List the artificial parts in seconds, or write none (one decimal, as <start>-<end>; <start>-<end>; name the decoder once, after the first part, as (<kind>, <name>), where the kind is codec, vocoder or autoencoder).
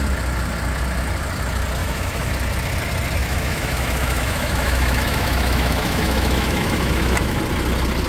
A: 1.8-2.3 (autoencoder, DAC-VAE); 3.2-7.4